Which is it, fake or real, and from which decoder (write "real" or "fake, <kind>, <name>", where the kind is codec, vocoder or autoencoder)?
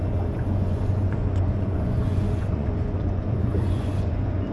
fake, vocoder, Vocos